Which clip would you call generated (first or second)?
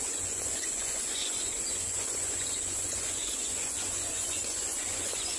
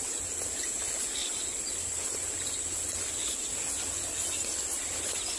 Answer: first